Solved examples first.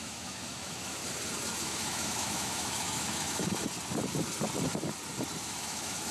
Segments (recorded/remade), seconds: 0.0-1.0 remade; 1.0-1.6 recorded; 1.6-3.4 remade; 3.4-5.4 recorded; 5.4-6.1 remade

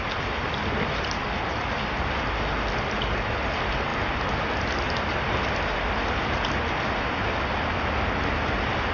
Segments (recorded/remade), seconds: 0.0-8.9 recorded

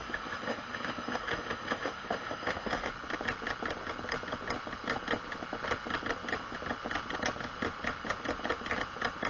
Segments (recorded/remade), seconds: 0.0-2.9 remade; 2.9-9.3 recorded

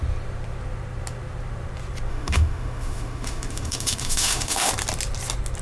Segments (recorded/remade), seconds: 0.0-2.1 recorded; 2.1-4.7 remade; 4.7-5.6 recorded